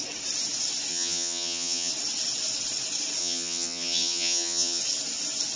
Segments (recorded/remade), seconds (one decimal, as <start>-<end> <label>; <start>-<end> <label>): 0.0-0.9 recorded; 0.9-1.9 remade; 1.9-3.2 recorded; 3.2-4.8 remade; 4.8-5.6 recorded